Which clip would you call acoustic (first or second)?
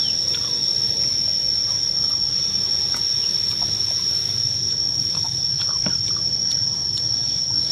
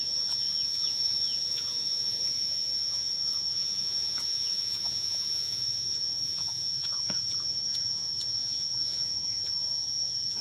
first